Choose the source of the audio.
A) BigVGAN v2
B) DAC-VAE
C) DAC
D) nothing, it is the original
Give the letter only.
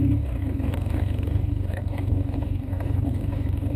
C